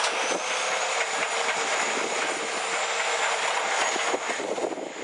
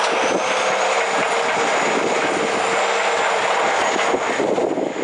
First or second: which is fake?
first